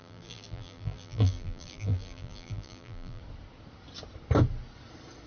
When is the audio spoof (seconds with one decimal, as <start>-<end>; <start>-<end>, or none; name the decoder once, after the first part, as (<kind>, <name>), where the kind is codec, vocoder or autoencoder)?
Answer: 0.0-3.2 (vocoder, BigVGAN v2)